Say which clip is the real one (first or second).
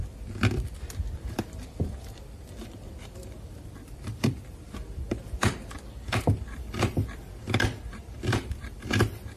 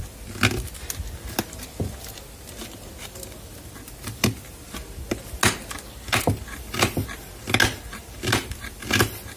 second